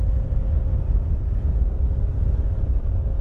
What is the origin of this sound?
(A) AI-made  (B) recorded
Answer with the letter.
B